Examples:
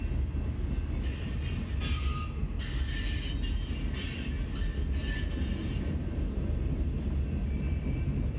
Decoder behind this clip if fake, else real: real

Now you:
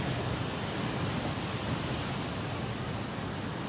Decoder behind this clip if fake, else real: real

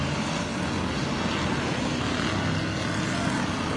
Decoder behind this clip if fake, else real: real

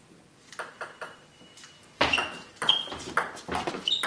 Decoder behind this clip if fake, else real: real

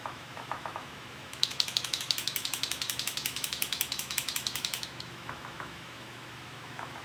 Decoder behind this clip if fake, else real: fake, autoencoder, DAC-VAE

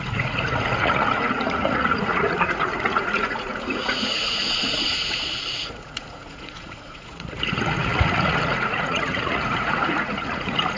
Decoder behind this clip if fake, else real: fake, vocoder, Vocos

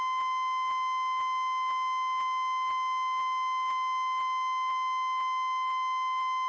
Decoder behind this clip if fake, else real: fake, autoencoder, DAC-VAE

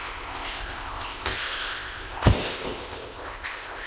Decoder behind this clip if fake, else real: fake, codec, ZipCodec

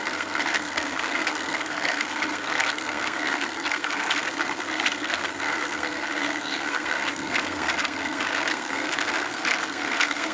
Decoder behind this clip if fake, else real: fake, codec, SNAC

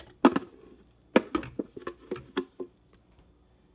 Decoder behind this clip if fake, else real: real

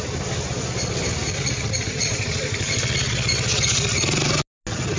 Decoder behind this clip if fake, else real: real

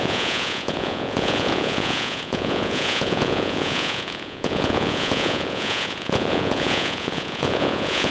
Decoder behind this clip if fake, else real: fake, vocoder, Vocos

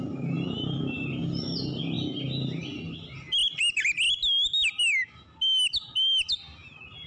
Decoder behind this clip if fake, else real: real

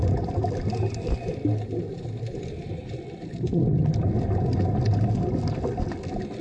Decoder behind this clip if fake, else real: real